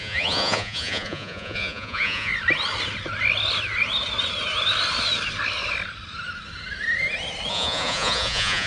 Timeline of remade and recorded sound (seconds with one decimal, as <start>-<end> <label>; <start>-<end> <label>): 0.0-2.3 remade; 2.3-7.5 recorded; 7.5-8.7 remade